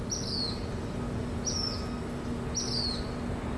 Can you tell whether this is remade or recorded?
recorded